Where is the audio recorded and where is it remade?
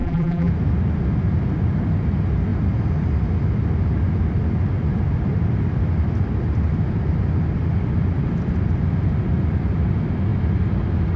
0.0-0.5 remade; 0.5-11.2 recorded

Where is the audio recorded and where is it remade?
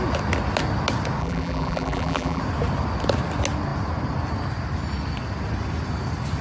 0.0-1.2 recorded; 1.2-2.4 remade; 2.4-6.4 recorded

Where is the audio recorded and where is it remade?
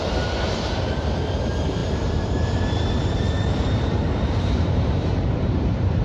0.0-6.0 remade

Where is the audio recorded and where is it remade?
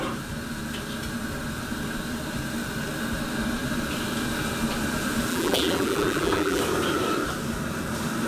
0.0-5.3 recorded; 5.3-6.6 remade; 6.6-8.3 recorded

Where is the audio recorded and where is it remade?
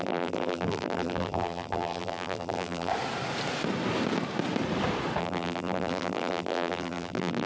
0.0-2.9 remade; 2.9-5.2 recorded; 5.2-7.5 remade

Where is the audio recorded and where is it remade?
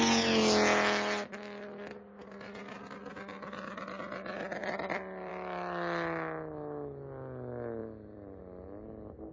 0.0-4.6 recorded; 4.6-5.3 remade; 5.3-7.8 recorded; 7.8-8.4 remade; 8.4-9.3 recorded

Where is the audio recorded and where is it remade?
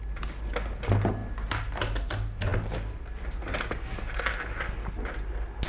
0.0-1.2 recorded; 1.2-1.8 remade; 1.8-5.7 recorded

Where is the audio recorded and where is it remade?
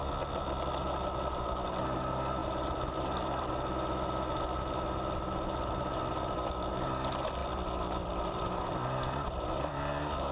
0.0-2.4 recorded; 2.4-3.5 remade; 3.5-7.4 recorded; 7.4-9.5 remade; 9.5-10.3 recorded